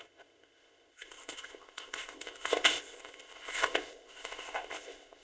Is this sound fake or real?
fake